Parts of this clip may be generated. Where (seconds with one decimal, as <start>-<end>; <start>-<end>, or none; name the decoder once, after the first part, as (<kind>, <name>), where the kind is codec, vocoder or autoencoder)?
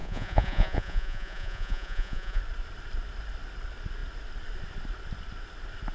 0.0-2.4 (vocoder, Vocos)